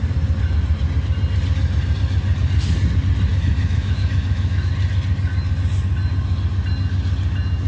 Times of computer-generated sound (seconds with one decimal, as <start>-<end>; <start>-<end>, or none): 3.3-4.7